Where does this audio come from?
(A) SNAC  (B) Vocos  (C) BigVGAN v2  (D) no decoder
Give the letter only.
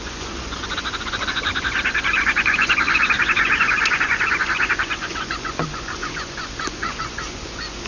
B